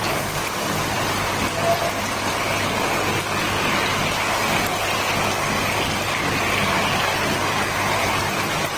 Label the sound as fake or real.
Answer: real